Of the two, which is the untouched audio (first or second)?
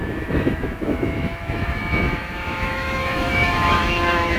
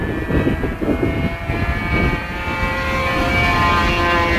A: second